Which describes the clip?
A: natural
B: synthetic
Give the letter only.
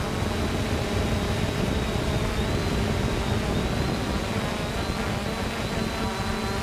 A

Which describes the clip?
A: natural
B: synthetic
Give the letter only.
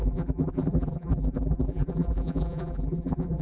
B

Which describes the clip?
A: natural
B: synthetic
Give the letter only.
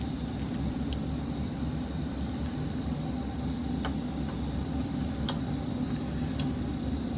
A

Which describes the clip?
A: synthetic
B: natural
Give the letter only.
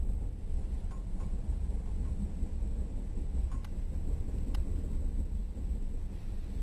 B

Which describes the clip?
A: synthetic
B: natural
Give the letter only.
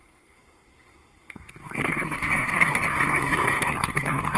A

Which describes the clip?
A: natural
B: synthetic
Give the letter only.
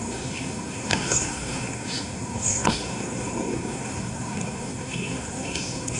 B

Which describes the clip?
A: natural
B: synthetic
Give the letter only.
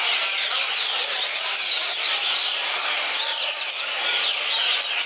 A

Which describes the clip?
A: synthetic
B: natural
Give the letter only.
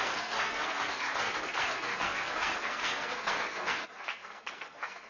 A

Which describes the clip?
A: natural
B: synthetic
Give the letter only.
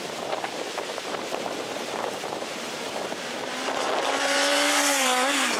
B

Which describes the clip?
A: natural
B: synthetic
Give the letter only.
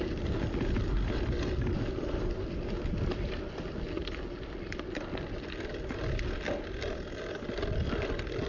A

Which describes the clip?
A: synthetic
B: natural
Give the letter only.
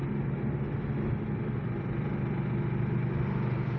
B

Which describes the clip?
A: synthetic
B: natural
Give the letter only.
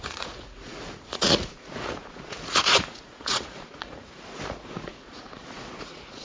A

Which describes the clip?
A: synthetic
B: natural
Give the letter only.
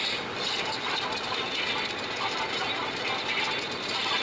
B